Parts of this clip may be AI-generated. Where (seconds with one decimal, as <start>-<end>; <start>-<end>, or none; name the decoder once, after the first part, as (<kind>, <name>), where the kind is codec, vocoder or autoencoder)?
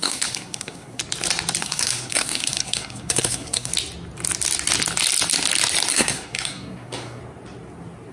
0.0-1.0 (codec, SNAC); 1.6-3.7; 5.9-7.2